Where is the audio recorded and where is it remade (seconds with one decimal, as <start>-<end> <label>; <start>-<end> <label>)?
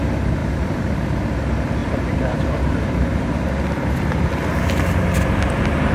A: 0.0-1.8 recorded; 1.8-4.3 remade; 4.3-5.9 recorded